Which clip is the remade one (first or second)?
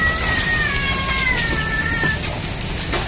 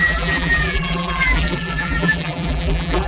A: second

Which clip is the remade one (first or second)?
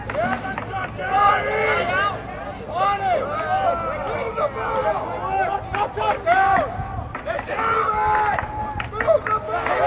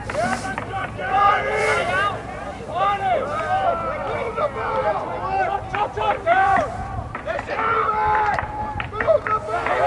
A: second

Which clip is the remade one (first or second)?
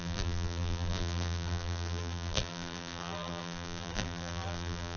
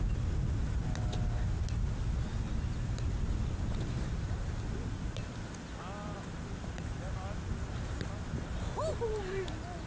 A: first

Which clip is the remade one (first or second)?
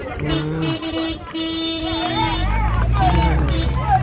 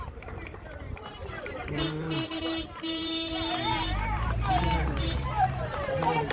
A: second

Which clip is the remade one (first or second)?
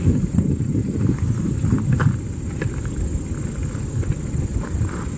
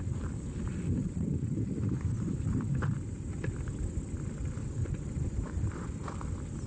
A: second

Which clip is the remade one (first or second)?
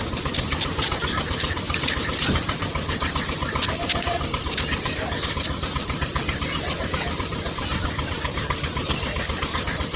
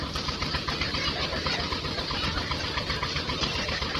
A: first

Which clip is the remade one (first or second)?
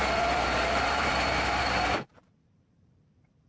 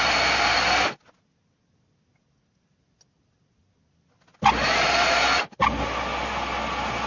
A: first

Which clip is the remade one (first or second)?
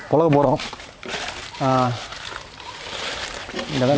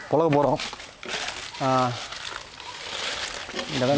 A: first